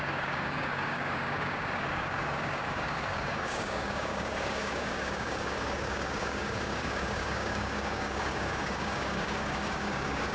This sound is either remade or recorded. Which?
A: remade